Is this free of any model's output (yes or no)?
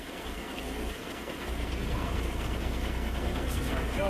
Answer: no